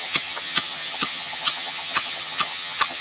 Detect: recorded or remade remade